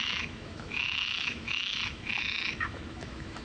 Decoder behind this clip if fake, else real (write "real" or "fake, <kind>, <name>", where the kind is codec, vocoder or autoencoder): fake, autoencoder, DAC-VAE